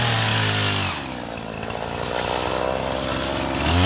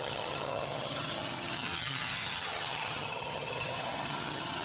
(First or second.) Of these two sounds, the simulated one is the second